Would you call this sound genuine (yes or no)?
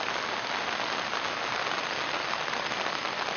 yes